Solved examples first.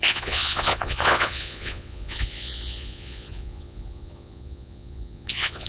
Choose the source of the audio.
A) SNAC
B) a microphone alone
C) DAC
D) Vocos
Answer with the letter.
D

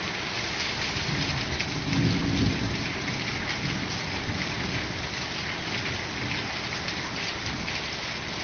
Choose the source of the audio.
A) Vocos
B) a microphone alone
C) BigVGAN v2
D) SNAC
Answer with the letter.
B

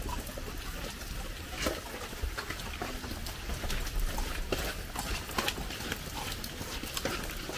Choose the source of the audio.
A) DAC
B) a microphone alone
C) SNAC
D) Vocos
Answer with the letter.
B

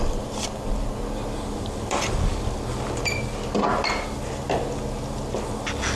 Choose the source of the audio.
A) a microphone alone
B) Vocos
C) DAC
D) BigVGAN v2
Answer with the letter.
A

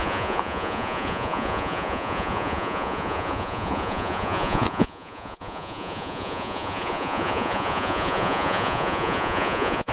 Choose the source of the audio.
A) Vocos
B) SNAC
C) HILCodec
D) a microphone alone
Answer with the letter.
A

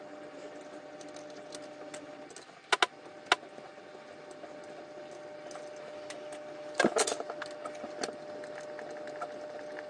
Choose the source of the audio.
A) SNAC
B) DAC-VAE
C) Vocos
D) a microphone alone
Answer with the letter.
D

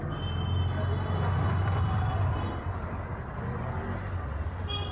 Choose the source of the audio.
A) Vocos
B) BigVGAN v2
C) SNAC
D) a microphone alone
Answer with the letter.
D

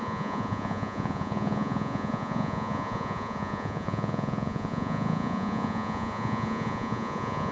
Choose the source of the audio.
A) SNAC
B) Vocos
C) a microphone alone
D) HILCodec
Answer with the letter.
B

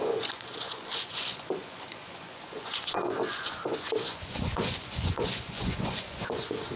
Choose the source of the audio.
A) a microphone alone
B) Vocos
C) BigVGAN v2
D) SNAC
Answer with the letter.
B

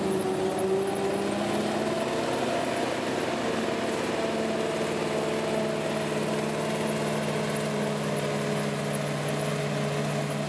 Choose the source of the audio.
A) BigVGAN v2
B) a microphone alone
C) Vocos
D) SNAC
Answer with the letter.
B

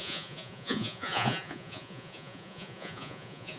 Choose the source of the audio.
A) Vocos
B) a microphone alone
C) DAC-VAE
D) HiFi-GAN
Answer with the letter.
A